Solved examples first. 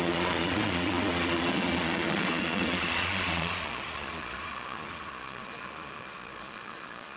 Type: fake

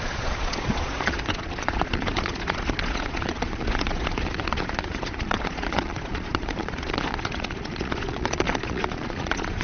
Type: fake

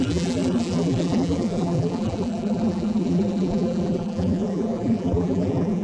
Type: fake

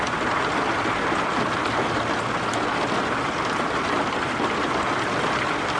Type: real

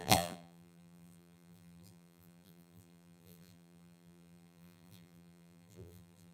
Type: fake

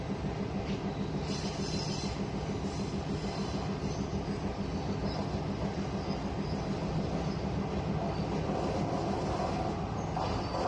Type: real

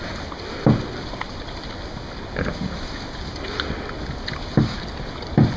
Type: real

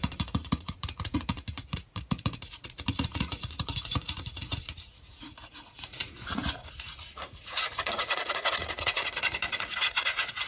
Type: fake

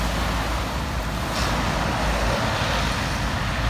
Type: real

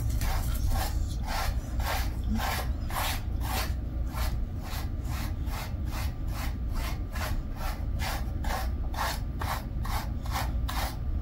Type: real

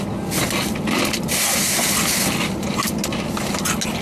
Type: real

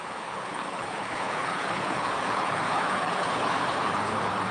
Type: fake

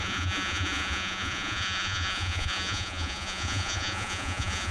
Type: fake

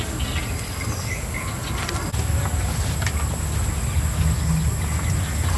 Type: real